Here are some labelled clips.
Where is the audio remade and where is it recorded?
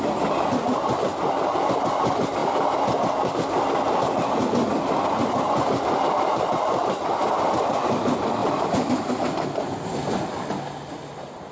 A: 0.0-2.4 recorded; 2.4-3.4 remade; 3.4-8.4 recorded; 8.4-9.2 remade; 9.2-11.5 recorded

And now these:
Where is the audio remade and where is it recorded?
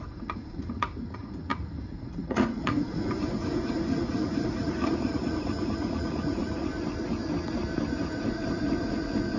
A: 0.0-6.7 remade; 6.7-7.9 recorded; 7.9-9.4 remade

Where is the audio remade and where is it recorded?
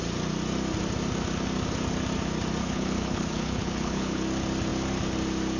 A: 0.0-2.6 recorded; 2.6-4.2 remade; 4.2-5.6 recorded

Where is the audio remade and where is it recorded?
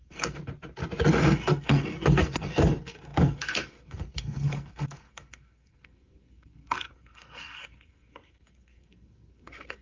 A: 0.0-0.4 remade; 0.4-1.0 recorded; 1.0-9.8 remade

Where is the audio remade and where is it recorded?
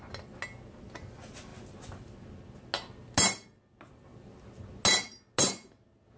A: 0.0-6.2 recorded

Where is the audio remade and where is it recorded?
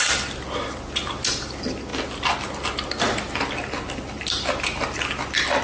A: 0.0-5.6 recorded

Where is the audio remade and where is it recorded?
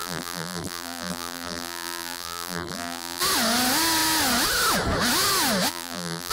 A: 0.0-3.2 remade; 3.2-5.7 recorded; 5.7-6.3 remade